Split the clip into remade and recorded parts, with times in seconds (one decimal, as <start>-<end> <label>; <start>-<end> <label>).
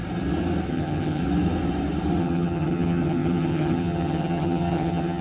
0.0-0.7 recorded; 0.7-1.2 remade; 1.2-2.2 recorded; 2.2-5.2 remade